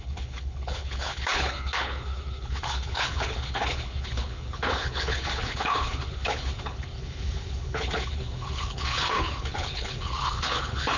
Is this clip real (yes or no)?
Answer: no